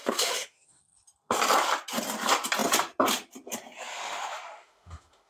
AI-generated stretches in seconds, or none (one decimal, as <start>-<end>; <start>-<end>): 0.0-0.8; 3.9-5.3